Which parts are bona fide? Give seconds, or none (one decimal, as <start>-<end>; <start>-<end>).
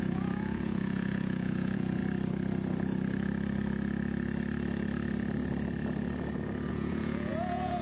2.0-6.7